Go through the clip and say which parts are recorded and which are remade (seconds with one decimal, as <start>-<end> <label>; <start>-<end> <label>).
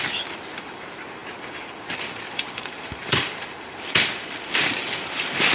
0.0-5.5 remade